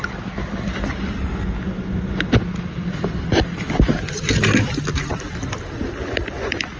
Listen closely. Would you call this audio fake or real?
real